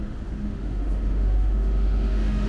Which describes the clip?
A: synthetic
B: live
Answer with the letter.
A